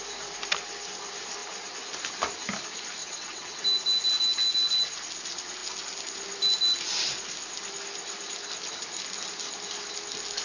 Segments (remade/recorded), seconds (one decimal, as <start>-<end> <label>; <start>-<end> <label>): 0.0-3.0 recorded; 3.0-3.6 remade; 3.6-10.4 recorded